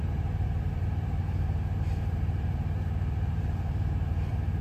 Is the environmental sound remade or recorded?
remade